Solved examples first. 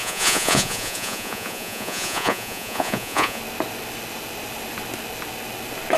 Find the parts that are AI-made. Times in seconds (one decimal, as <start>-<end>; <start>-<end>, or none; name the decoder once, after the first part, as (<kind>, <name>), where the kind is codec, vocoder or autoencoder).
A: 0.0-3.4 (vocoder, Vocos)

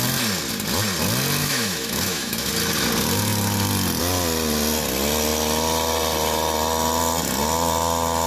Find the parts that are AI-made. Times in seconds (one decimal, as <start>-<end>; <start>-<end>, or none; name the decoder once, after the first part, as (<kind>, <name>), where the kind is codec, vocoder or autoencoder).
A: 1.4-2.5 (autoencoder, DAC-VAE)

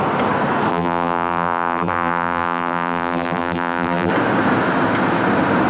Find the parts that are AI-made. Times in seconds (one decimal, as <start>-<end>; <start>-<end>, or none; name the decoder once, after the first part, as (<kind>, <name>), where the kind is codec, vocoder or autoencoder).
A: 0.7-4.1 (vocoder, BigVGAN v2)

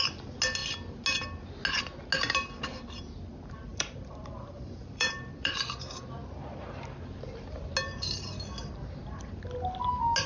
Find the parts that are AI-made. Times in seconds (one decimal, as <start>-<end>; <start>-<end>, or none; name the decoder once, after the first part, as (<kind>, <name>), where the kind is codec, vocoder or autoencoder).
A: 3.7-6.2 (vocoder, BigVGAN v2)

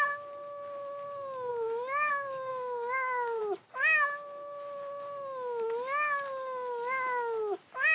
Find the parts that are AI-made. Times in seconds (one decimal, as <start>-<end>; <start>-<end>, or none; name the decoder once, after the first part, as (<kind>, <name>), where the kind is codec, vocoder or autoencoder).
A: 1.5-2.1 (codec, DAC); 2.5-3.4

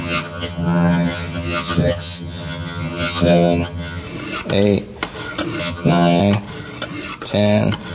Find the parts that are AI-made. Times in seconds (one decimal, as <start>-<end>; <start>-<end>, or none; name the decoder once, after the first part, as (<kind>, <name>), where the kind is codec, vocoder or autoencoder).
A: 0.0-4.0 (vocoder, HiFi-GAN); 5.6-6.2

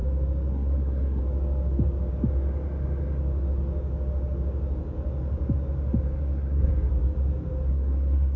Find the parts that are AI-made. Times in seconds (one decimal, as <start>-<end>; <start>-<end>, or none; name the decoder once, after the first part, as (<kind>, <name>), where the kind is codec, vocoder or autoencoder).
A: 0.5-1.2 (codec, SNAC); 6.2-6.7; 7.7-8.4

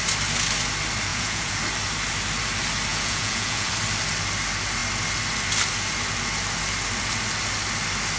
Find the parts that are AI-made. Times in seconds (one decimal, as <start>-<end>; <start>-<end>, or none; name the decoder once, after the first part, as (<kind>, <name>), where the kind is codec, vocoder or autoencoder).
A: 1.1-1.6 (vocoder, Vocos); 2.9-3.7